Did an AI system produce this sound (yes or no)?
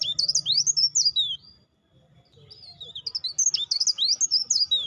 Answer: no